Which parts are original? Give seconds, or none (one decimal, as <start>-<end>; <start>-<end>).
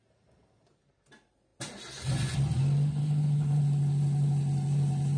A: 0.0-3.0; 3.6-5.2